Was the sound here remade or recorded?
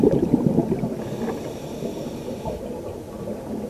recorded